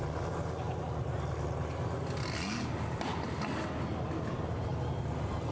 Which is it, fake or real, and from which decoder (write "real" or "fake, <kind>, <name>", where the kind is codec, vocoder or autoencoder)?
real